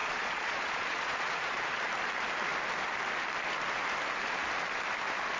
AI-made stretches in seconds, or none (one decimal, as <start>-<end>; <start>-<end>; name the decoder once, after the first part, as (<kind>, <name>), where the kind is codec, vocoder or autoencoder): 0.0-1.8 (vocoder, Vocos)